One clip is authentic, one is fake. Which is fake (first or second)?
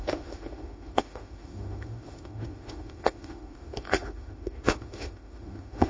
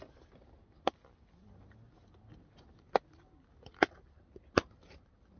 first